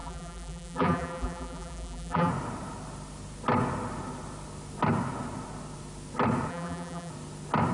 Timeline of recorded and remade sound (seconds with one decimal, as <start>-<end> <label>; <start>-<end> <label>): 0.0-2.3 remade; 2.3-6.5 recorded; 6.5-7.1 remade; 7.1-7.7 recorded